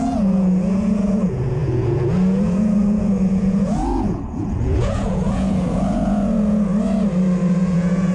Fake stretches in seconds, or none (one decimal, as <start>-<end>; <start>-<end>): 0.0-6.7; 7.5-8.1